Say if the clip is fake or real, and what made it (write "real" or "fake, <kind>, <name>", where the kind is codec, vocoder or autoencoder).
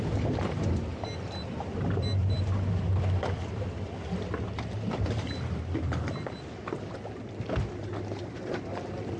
real